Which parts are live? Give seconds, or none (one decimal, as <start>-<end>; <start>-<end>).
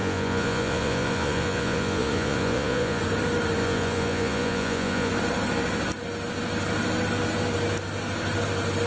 3.0-3.6; 5.1-8.9